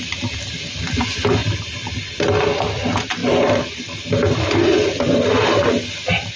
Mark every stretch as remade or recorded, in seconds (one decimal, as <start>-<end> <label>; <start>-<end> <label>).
0.0-6.4 recorded